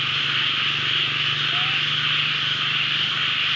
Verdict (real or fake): real